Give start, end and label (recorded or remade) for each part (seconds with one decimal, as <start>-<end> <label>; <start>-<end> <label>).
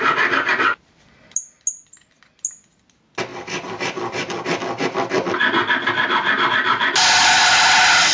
0.0-0.5 recorded; 0.5-1.1 remade; 1.1-8.1 recorded